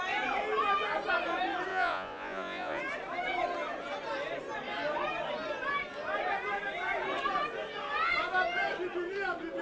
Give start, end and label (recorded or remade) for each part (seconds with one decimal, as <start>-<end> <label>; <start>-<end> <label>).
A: 0.0-1.7 recorded; 1.7-2.8 remade; 2.8-9.6 recorded